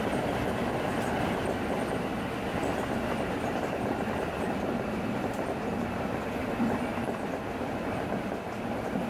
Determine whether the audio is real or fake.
real